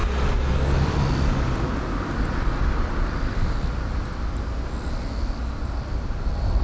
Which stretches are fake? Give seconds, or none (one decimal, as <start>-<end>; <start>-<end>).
0.0-4.0